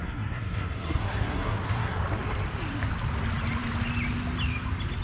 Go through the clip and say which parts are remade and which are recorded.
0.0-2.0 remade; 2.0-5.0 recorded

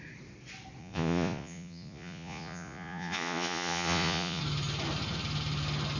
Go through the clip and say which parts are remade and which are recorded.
0.0-0.8 recorded; 0.8-4.4 remade; 4.4-6.0 recorded

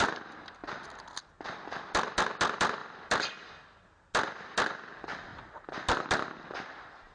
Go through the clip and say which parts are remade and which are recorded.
0.0-7.1 recorded

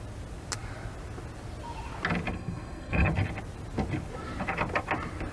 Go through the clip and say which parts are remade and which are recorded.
0.0-2.3 recorded; 2.3-3.1 remade; 3.1-5.3 recorded

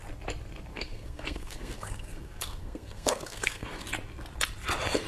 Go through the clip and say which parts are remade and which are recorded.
0.0-0.7 recorded; 0.7-3.8 remade; 3.8-5.1 recorded